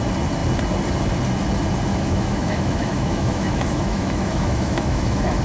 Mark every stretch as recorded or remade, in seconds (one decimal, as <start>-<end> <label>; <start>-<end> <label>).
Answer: 0.0-1.9 recorded; 1.9-5.4 remade